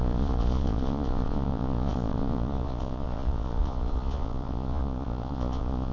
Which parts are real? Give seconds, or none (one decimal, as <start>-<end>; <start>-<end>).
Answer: none